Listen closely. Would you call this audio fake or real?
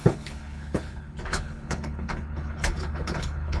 fake